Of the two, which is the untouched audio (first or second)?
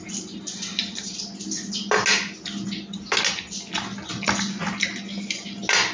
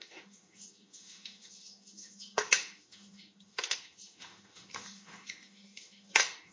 first